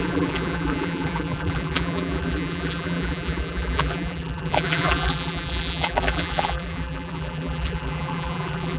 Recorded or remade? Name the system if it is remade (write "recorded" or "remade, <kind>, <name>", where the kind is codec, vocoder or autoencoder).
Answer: remade, vocoder, BigVGAN v2